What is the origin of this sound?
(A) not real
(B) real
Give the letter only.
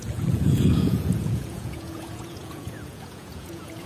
A